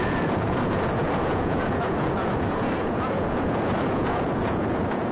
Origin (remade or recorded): remade